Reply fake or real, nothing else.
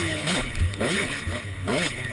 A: fake